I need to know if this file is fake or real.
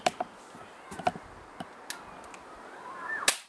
real